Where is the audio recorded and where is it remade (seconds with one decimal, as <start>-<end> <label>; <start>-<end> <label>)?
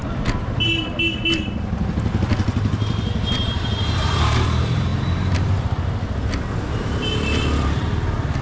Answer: 0.0-3.3 recorded; 3.3-4.9 remade; 4.9-8.4 recorded